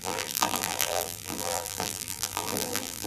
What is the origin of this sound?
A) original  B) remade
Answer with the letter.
B